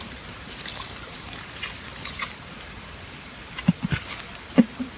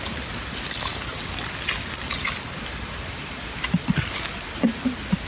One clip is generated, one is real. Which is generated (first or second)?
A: first